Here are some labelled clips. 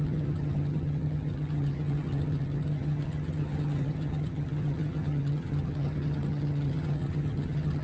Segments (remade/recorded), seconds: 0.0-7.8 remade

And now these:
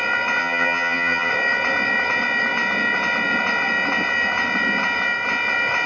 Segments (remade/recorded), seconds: 0.0-0.4 recorded; 0.4-1.3 remade; 1.3-5.9 recorded